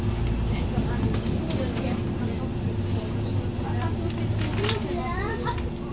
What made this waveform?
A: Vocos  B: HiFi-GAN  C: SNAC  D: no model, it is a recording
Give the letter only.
D